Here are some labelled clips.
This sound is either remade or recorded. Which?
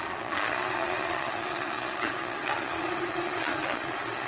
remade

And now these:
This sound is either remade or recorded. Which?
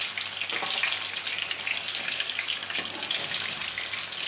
recorded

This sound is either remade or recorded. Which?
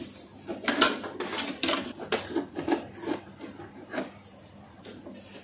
recorded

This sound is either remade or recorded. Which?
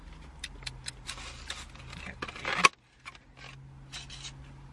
recorded